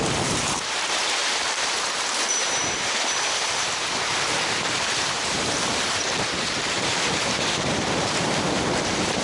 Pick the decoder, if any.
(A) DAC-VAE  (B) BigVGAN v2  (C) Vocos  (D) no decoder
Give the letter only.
B